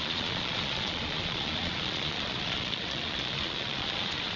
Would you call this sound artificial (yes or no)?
yes